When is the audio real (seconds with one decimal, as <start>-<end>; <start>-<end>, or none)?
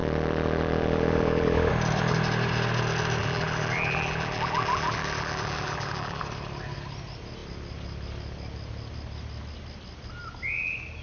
1.7-3.2; 6.2-11.0